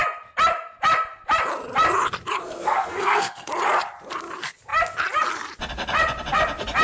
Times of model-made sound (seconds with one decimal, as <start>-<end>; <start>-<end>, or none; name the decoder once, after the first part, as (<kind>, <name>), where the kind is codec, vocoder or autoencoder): 2.4-3.5 (codec, SNAC)